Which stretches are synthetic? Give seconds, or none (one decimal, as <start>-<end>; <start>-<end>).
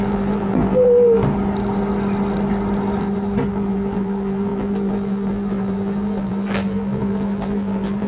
0.0-1.2; 3.5-8.1